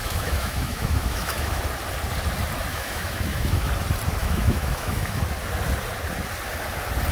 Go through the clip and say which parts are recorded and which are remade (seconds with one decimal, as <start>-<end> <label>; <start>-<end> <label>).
0.0-1.6 remade; 1.6-2.7 recorded; 2.7-3.7 remade; 3.7-4.2 recorded; 4.2-5.2 remade; 5.2-7.1 recorded